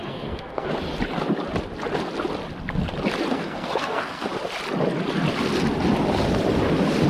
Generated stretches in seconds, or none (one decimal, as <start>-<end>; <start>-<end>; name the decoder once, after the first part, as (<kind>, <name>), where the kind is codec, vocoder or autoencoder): 0.0-0.7 (codec, SNAC); 3.3-4.3